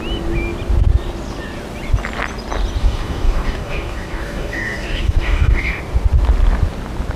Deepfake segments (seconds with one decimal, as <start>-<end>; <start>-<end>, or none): 2.8-5.8